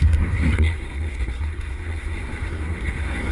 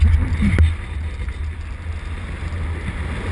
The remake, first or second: first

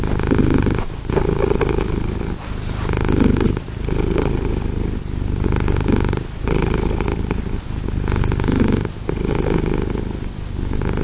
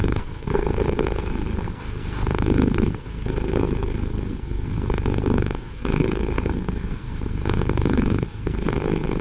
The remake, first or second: second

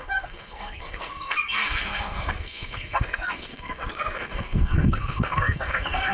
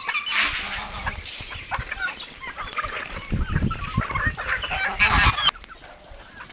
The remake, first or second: first